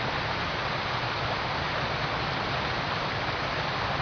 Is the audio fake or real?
real